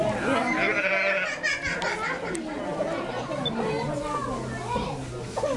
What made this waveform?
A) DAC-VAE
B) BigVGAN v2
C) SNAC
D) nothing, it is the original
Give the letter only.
D